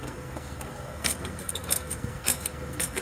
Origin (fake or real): fake